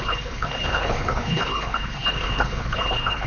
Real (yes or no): no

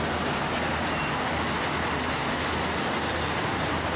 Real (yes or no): yes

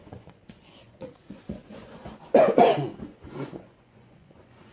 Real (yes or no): no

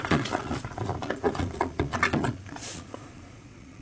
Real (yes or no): no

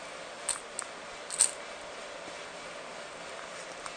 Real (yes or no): yes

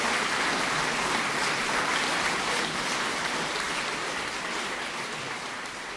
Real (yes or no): no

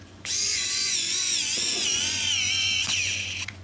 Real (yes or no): no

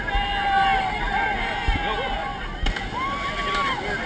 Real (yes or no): yes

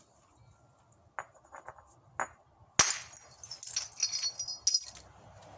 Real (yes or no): yes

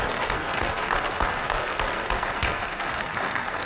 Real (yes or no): no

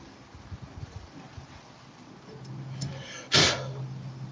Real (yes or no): yes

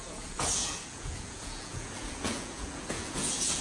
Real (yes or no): no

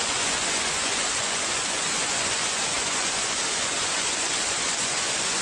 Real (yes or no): no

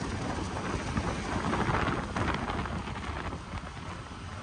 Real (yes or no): yes